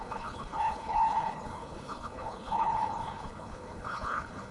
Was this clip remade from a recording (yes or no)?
yes